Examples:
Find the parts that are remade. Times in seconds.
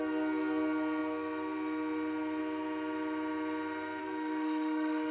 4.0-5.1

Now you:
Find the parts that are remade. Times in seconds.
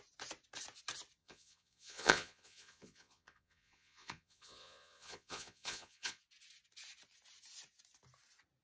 1.2-6.2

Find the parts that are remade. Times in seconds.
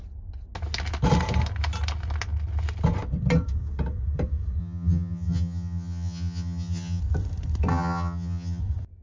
4.6-7.0; 7.7-8.6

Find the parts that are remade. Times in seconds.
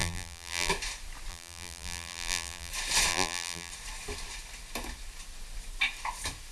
0.0-0.7; 1.3-2.7; 3.1-3.7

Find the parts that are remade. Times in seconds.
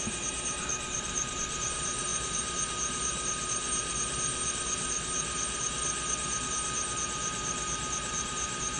0.0-8.8